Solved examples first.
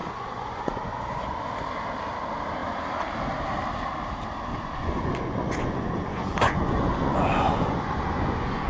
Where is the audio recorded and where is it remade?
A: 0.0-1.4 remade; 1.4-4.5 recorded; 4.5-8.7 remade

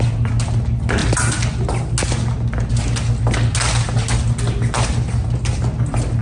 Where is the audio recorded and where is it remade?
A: 0.0-6.2 recorded

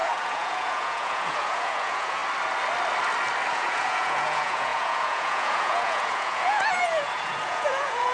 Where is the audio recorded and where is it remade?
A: 0.0-2.2 remade; 2.2-3.5 recorded; 3.5-8.1 remade